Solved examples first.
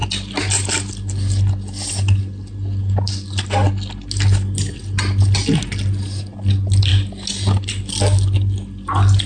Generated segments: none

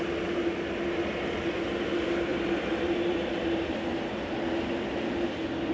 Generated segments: 2.3-5.7 (vocoder, BigVGAN v2)

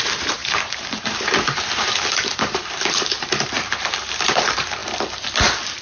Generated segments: 0.0-4.8 (vocoder, BigVGAN v2)

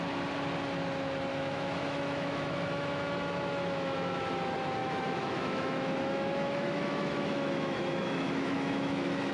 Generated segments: 1.3-4.2 (autoencoder, DAC-VAE); 4.8-9.3